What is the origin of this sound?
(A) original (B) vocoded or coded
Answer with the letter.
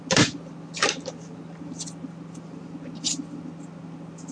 A